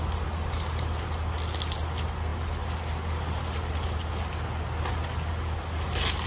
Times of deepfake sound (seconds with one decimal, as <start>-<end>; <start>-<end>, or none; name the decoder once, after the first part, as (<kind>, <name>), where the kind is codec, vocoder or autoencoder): none